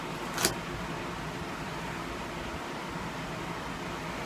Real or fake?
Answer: real